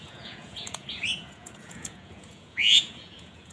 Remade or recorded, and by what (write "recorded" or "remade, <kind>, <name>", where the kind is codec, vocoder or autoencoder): remade, vocoder, Vocos